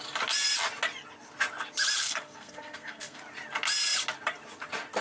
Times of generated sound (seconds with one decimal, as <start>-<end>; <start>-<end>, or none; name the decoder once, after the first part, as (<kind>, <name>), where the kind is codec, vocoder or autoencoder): 2.0-3.2 (codec, SNAC)